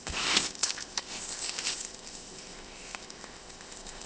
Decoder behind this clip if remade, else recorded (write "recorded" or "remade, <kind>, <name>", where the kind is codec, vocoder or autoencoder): remade, codec, ZipCodec